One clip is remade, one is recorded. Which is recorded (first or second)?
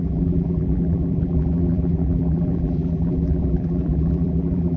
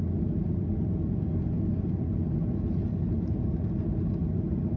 second